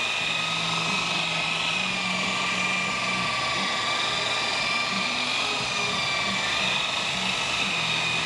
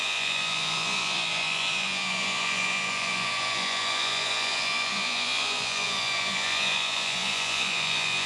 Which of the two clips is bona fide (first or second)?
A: first